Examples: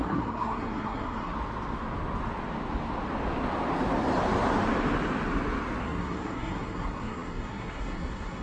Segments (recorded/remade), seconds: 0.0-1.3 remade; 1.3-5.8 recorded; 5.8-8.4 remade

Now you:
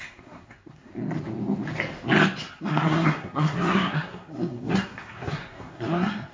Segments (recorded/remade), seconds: 0.0-0.9 remade; 0.9-2.5 recorded; 2.5-6.3 remade

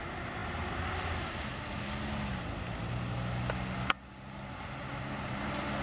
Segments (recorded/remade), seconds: 0.0-5.8 recorded

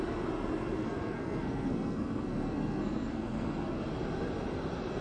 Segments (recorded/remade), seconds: 0.0-0.8 recorded; 0.8-3.8 remade; 3.8-5.0 recorded

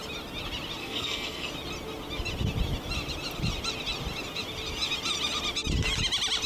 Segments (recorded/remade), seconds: 0.0-0.8 recorded; 0.8-1.5 remade; 1.5-6.5 recorded

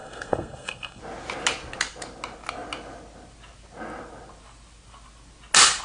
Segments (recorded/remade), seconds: 0.0-1.0 remade; 1.0-5.8 recorded

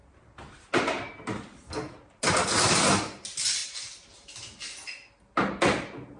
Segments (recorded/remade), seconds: 0.0-6.2 recorded

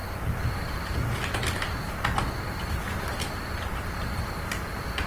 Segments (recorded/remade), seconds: 0.0-5.1 recorded